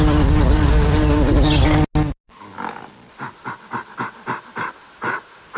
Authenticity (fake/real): real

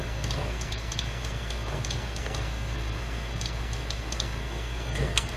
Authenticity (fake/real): fake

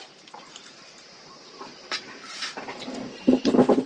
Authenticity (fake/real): fake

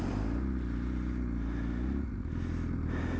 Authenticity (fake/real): real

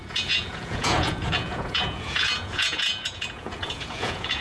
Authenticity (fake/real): fake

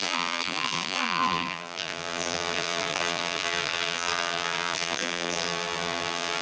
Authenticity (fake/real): fake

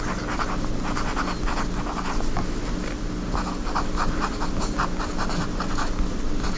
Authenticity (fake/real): real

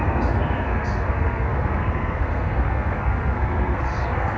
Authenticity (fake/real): fake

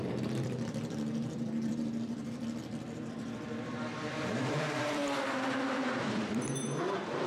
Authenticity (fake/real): fake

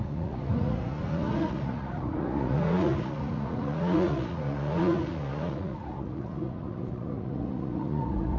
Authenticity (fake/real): fake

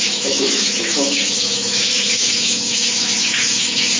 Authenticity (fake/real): fake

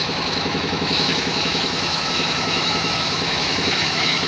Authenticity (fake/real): fake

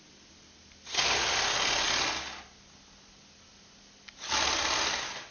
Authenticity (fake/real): real